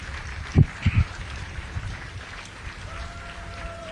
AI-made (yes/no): yes